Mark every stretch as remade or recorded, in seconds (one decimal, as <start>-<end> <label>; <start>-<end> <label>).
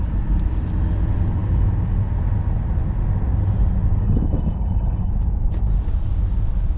0.0-4.0 recorded; 4.0-5.1 remade; 5.1-6.8 recorded